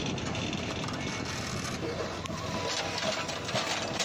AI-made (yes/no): no